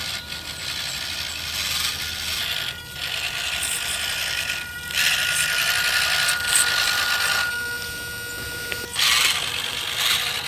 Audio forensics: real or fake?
real